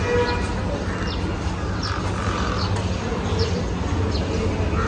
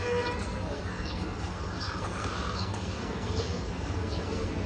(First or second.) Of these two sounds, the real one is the first